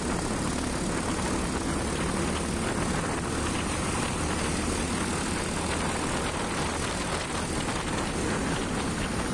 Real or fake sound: real